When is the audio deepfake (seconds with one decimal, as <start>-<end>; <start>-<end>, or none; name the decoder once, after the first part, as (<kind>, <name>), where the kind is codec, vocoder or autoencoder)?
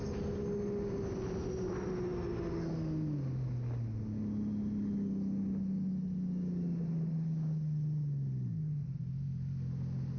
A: none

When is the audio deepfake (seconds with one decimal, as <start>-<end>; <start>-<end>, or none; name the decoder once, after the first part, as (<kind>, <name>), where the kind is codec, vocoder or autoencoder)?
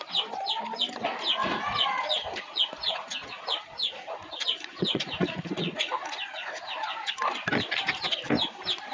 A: 1.4-6.2 (vocoder, Vocos)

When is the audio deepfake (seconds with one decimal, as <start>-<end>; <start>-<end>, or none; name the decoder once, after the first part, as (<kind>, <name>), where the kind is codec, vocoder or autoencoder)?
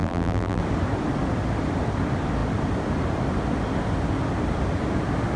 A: 0.0-0.6 (vocoder, BigVGAN v2)